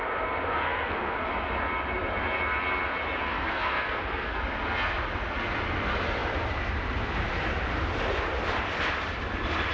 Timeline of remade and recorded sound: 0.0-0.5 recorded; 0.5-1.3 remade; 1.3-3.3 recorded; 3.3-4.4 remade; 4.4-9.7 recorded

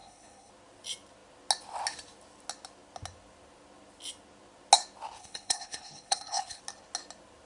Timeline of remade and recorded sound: 0.0-0.5 remade; 0.5-5.2 recorded; 5.2-6.6 remade; 6.6-7.5 recorded

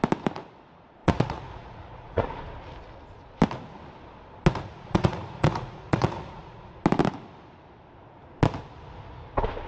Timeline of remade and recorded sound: 0.0-1.0 recorded; 1.0-2.4 remade; 2.4-4.7 recorded; 4.7-6.7 remade; 6.7-9.7 recorded

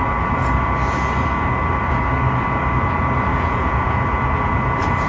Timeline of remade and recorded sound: 0.0-3.3 recorded; 3.3-4.0 remade; 4.0-5.1 recorded

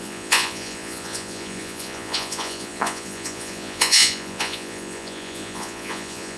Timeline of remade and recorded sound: 0.0-6.4 remade

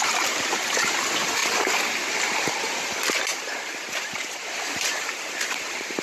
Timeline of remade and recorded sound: 0.0-1.4 remade; 1.4-2.6 recorded; 2.6-6.0 remade